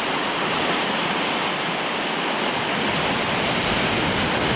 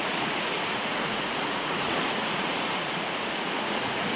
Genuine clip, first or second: first